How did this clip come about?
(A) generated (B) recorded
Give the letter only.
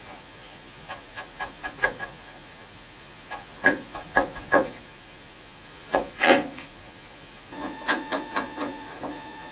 A